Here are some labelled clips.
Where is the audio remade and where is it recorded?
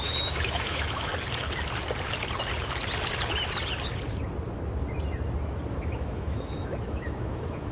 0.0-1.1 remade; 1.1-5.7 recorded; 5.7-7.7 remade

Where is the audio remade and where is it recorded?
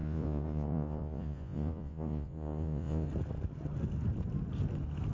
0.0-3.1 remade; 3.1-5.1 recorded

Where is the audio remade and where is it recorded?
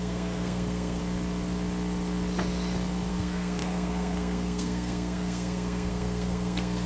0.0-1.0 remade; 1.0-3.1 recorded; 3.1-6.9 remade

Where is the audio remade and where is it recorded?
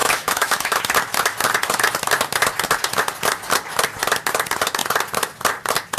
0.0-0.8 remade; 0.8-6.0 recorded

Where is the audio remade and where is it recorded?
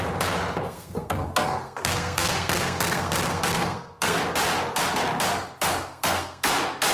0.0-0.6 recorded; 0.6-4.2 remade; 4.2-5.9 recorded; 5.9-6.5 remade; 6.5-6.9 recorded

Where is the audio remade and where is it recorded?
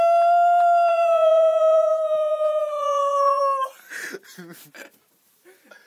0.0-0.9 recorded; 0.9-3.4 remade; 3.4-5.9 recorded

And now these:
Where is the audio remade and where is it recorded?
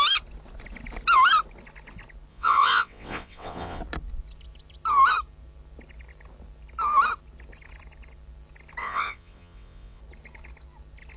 0.0-2.3 recorded; 2.3-3.8 remade; 3.8-8.8 recorded; 8.8-10.0 remade; 10.0-11.2 recorded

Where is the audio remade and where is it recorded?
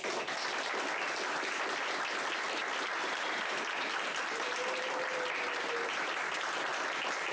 0.0-7.3 recorded